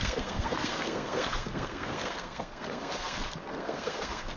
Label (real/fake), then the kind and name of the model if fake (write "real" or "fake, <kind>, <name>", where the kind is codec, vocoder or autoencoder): fake, codec, SNAC